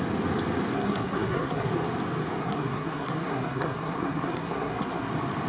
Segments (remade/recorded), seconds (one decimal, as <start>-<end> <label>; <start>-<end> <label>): 0.0-0.7 recorded; 0.7-1.7 remade; 1.7-2.4 recorded; 2.4-5.1 remade; 5.1-5.5 recorded